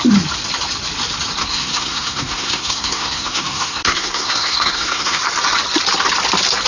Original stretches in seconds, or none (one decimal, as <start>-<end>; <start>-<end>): 0.0-1.4; 5.2-6.7